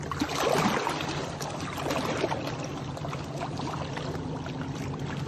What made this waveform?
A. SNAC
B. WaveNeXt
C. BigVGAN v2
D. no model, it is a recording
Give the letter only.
D